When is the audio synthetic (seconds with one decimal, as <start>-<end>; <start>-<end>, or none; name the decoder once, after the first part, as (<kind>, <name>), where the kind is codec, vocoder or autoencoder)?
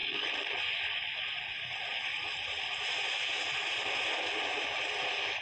none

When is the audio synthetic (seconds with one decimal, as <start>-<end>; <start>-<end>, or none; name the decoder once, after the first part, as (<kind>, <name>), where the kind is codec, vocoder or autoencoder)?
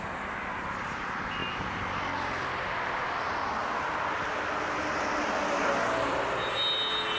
none